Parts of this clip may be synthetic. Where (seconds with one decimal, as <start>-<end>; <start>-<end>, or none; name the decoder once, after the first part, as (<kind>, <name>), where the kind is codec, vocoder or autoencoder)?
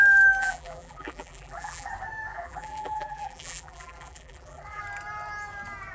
0.4-1.9 (vocoder, BigVGAN v2); 2.3-4.8